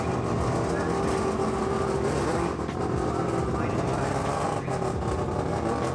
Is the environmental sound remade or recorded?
recorded